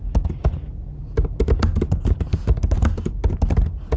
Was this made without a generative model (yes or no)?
yes